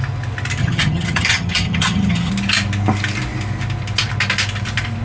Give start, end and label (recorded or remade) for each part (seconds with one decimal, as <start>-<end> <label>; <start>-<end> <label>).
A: 0.0-0.6 recorded; 0.6-2.3 remade; 2.3-5.0 recorded